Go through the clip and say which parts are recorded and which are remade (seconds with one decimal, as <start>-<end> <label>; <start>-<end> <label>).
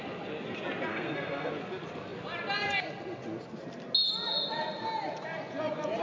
0.0-0.9 recorded; 0.9-1.5 remade; 1.5-6.0 recorded